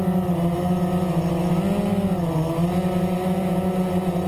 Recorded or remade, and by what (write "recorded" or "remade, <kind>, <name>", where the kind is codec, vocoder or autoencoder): recorded